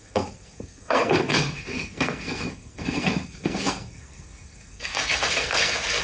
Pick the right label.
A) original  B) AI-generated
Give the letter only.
B